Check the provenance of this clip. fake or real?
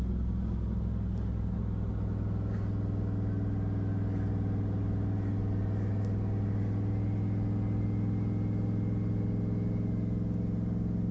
real